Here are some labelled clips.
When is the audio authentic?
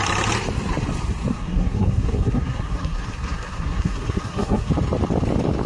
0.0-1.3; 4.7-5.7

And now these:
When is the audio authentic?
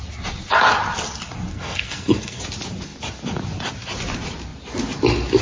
0.0-1.5; 2.4-5.4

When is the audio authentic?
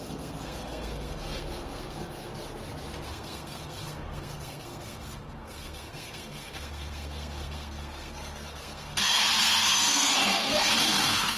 2.3-3.1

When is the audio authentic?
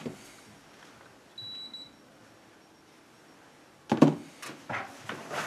0.0-5.5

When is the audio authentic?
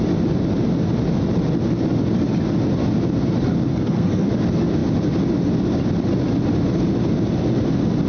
0.0-3.7; 4.3-8.1